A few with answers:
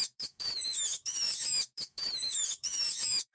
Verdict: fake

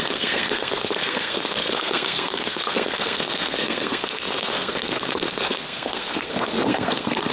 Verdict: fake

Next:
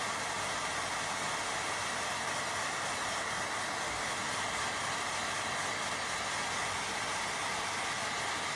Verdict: real